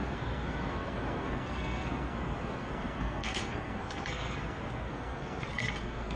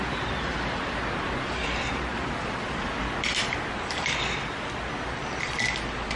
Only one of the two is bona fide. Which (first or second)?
second